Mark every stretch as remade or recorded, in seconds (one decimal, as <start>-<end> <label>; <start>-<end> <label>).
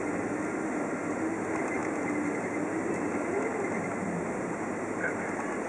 0.0-5.7 recorded